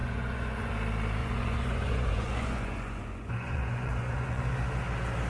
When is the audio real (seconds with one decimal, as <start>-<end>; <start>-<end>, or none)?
0.7-1.2; 4.4-5.3